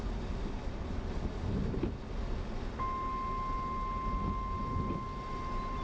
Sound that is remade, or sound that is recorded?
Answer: recorded